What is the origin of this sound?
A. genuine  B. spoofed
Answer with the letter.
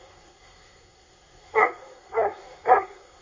B